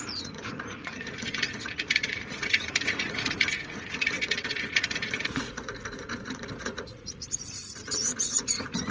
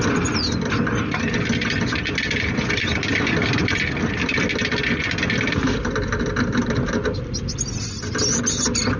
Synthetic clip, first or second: first